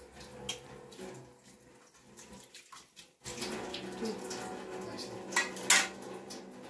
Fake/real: real